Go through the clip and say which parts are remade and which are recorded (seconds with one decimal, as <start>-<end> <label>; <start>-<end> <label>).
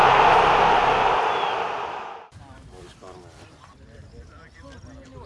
0.0-5.3 recorded